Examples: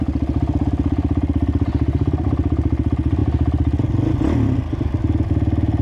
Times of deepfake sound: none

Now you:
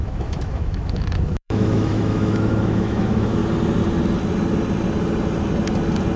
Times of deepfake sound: 0.0-3.4 (autoencoder, DAC-VAE)

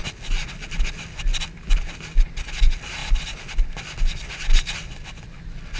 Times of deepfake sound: none

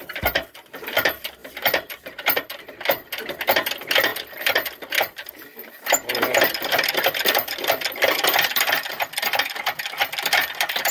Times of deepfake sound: 0.0-10.9 (vocoder, BigVGAN v2)

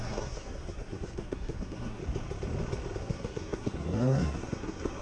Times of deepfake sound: 0.0-2.0 (codec, SNAC); 3.0-5.0

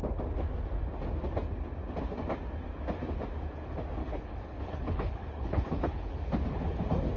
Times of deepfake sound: 4.0-6.3 (codec, HILCodec)

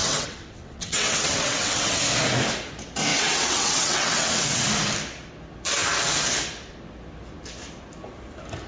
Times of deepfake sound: 0.0-2.0 (vocoder, WaveNeXt); 3.1-4.6

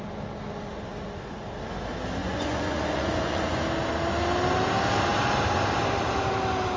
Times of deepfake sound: 2.2-3.6 (vocoder, Vocos)